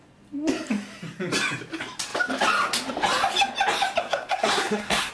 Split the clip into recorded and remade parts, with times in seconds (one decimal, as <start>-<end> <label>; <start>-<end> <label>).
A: 0.0-4.0 recorded; 4.0-5.1 remade